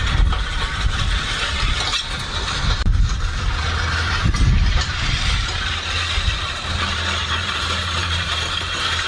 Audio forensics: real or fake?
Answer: fake